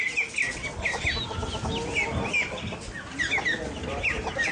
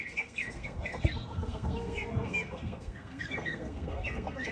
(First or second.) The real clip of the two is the first